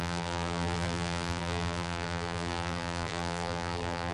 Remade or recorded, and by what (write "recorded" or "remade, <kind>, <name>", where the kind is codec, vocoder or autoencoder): remade, vocoder, BigVGAN v2